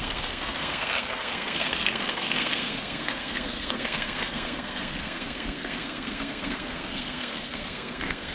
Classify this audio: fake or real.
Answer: fake